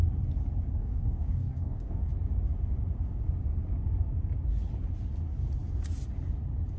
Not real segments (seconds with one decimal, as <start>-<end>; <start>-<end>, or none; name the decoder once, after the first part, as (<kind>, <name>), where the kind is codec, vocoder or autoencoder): 0.8-2.1 (codec, DAC)